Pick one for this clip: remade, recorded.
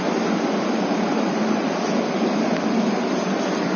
remade